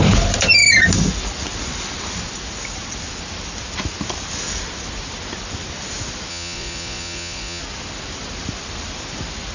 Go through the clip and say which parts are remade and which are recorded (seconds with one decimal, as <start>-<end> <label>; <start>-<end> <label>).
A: 0.0-6.3 recorded; 6.3-7.6 remade; 7.6-9.5 recorded